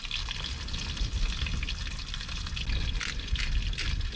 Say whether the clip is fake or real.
real